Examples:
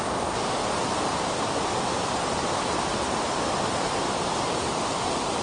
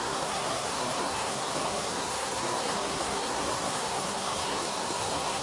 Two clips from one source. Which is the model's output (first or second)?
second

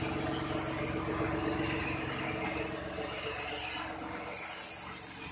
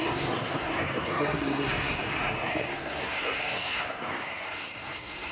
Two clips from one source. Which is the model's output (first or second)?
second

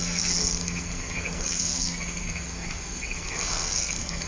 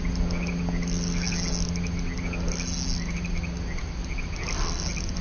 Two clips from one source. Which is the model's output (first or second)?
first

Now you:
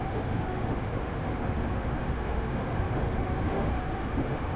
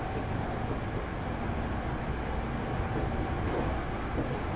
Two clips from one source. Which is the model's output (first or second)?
first